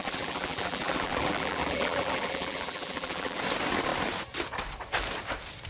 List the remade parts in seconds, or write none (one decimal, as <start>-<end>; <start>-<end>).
0.0-3.4